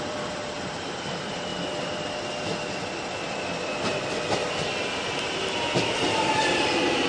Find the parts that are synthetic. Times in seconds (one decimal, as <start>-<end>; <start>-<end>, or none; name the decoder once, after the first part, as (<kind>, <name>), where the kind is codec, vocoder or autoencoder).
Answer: 0.0-1.5 (vocoder, BigVGAN v2); 5.8-7.1